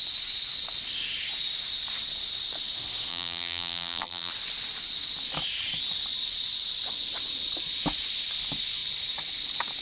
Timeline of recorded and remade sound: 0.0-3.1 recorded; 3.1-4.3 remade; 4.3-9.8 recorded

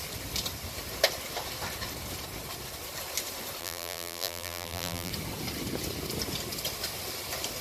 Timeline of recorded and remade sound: 0.0-3.6 recorded; 3.6-5.1 remade; 5.1-7.6 recorded

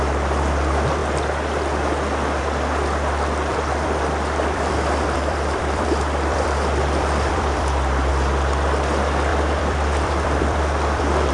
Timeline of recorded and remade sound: 0.0-3.5 recorded; 3.5-8.1 remade; 8.1-9.3 recorded; 9.3-11.3 remade

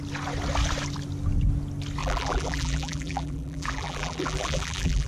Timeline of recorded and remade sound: 0.0-2.0 recorded; 2.0-5.1 remade

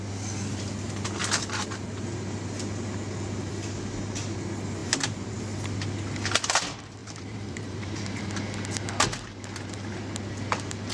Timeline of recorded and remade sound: 0.0-4.8 recorded; 4.8-5.4 remade; 5.4-7.0 recorded; 7.0-8.2 remade; 8.2-10.9 recorded

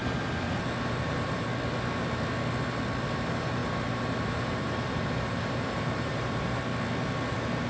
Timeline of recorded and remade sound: 0.0-0.9 recorded; 0.9-1.5 remade; 1.5-3.0 recorded; 3.0-6.7 remade; 6.7-7.3 recorded; 7.3-7.7 remade